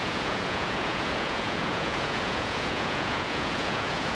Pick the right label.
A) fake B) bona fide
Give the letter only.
A